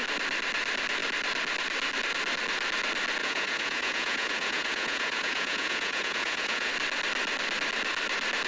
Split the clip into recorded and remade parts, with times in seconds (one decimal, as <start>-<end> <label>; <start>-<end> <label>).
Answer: 0.0-3.2 recorded; 3.2-6.7 remade; 6.7-8.5 recorded